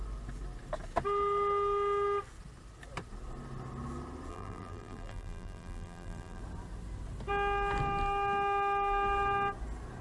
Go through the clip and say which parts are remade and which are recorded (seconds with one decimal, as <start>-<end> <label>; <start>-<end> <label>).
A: 0.0-4.3 recorded; 4.3-6.4 remade; 6.4-10.0 recorded